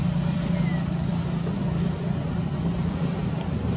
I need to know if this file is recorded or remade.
recorded